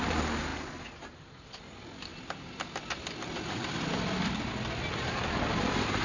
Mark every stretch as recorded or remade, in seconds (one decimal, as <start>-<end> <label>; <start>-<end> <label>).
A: 0.0-6.0 recorded